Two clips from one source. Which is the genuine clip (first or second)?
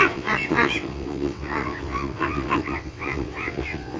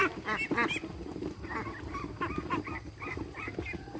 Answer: second